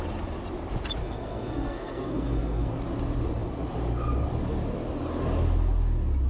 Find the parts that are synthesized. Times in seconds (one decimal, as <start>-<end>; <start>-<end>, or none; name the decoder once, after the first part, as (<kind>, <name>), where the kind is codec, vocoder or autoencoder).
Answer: 1.0-2.7 (codec, SNAC)